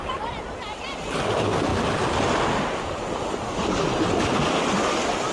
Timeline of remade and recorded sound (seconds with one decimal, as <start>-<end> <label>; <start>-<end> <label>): 0.0-5.3 recorded